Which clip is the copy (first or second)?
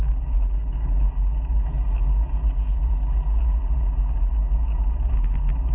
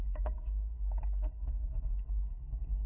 second